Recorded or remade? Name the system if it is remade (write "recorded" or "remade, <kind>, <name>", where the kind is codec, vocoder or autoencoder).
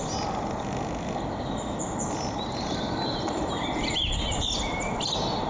recorded